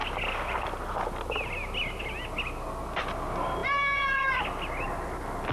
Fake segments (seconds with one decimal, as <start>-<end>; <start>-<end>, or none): 3.6-4.4